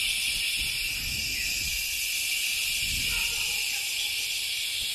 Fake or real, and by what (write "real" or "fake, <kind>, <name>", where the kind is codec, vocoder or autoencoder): real